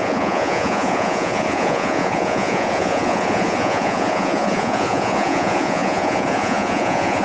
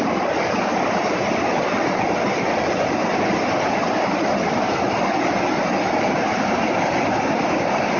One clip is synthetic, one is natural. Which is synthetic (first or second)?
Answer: first